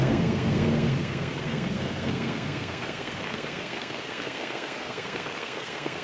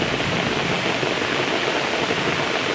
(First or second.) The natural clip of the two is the second